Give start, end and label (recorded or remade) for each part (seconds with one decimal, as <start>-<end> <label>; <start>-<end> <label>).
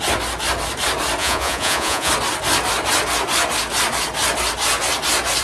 0.0-1.2 recorded; 1.2-2.1 remade; 2.1-5.4 recorded